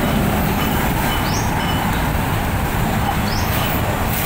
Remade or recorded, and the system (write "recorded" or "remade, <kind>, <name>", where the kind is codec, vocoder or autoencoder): remade, vocoder, BigVGAN v2